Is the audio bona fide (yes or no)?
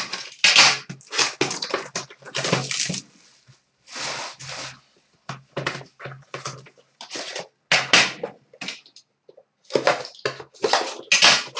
yes